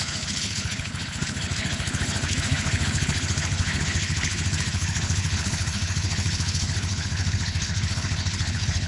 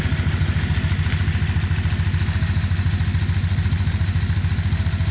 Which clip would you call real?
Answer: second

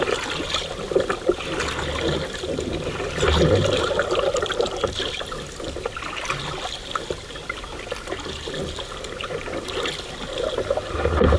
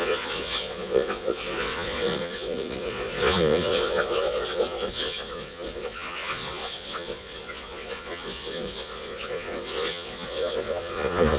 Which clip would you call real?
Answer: first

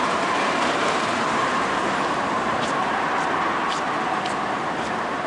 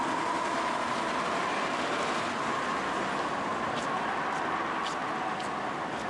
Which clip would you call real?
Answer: second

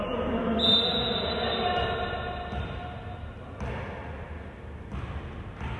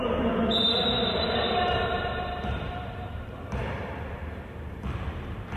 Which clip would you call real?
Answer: first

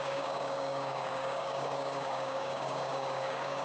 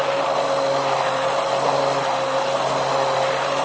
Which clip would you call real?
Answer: second